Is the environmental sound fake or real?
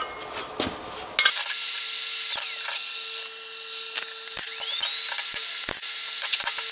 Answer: real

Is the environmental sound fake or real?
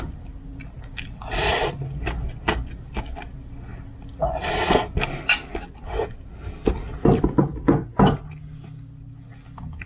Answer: real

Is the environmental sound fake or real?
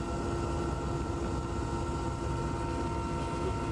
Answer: real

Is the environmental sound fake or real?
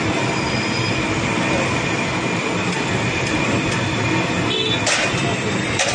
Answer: real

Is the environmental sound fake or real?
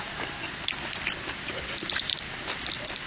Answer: real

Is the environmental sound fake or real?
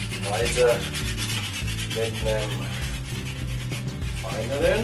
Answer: real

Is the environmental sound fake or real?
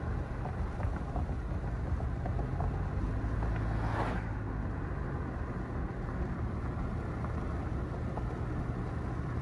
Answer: real